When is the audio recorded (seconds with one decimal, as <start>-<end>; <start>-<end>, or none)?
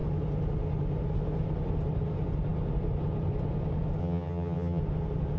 0.0-4.0; 4.8-5.4